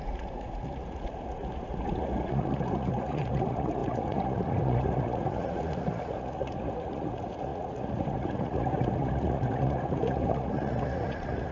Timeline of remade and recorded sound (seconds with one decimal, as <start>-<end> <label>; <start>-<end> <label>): 0.0-11.5 remade

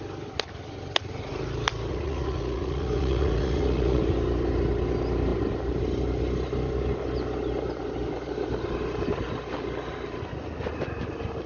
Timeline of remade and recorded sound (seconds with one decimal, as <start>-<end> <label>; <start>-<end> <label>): 0.0-1.9 recorded; 1.9-4.0 remade; 4.0-11.5 recorded

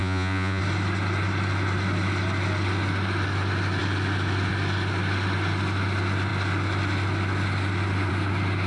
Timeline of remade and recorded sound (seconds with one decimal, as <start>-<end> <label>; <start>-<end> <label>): 0.0-0.6 remade; 0.6-8.7 recorded

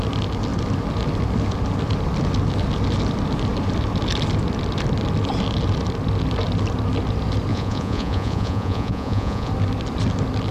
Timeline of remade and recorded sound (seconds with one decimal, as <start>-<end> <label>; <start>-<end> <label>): 0.0-7.5 recorded; 7.5-9.5 remade; 9.5-10.5 recorded